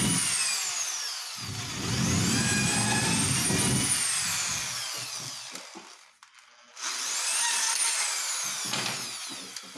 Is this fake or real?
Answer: real